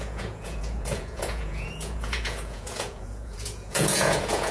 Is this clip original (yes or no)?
no